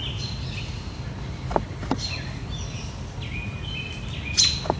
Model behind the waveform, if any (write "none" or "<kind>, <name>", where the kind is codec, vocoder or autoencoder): none